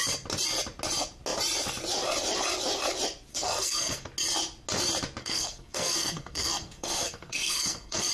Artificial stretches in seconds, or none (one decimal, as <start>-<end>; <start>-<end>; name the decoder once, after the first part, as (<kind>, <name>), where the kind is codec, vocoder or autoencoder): 3.3-4.1 (codec, SNAC); 5.2-8.1